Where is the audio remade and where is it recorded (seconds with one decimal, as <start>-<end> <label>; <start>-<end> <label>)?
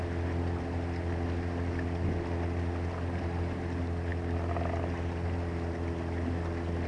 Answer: 0.0-6.9 recorded